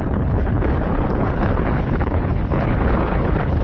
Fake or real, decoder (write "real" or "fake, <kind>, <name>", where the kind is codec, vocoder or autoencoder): fake, codec, HILCodec